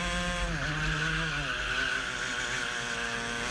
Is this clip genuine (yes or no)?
yes